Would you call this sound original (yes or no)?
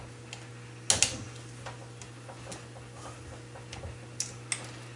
yes